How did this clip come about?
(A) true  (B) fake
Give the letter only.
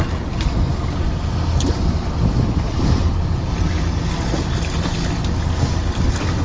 A